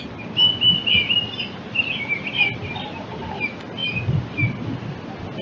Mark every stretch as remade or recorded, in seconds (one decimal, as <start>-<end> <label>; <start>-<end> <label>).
0.0-5.4 recorded